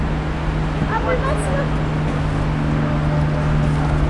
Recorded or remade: recorded